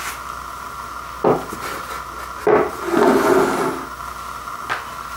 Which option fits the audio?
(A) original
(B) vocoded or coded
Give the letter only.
A